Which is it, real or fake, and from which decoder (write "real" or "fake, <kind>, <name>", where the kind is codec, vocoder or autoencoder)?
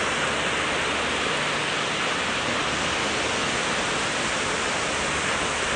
real